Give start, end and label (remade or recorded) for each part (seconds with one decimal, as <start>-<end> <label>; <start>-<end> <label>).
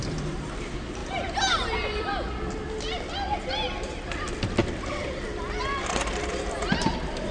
0.0-7.3 recorded